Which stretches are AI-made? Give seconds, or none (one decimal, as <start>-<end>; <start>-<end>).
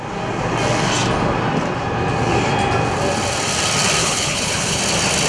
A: 4.0-4.8